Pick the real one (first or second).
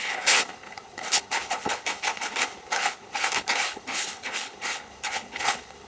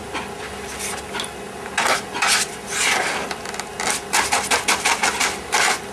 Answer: second